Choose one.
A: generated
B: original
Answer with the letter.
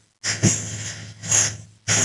B